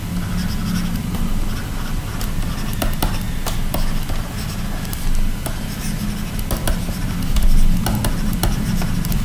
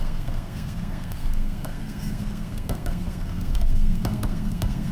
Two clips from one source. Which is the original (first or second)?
first